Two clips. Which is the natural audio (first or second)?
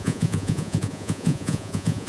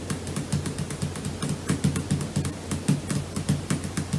second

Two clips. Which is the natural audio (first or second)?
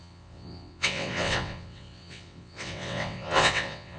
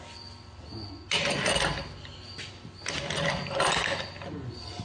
second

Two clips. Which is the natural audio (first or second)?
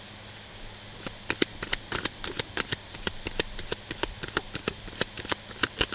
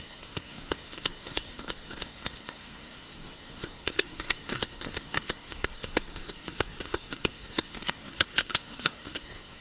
first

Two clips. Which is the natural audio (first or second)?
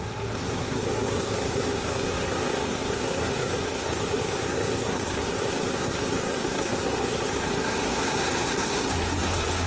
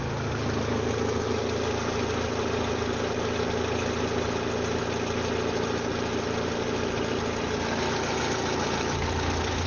second